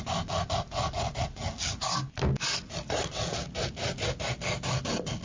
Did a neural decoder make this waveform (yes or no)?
no